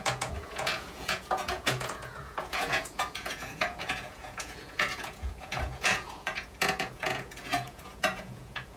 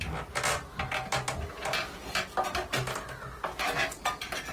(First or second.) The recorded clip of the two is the second